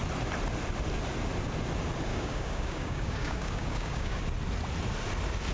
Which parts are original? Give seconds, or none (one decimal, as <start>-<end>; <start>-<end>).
0.0-2.1; 4.2-5.5